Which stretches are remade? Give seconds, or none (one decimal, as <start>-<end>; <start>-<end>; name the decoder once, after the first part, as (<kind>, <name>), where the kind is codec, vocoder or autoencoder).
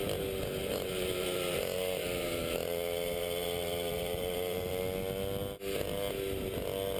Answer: 0.6-4.8 (vocoder, BigVGAN v2)